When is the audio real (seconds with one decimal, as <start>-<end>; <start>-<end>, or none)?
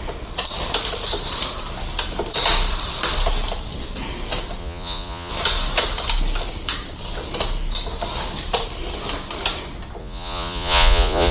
0.0-4.6; 5.3-10.0